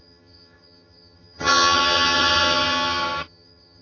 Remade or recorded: remade